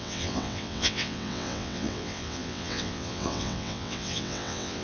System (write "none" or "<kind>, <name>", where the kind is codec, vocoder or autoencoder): vocoder, WaveNeXt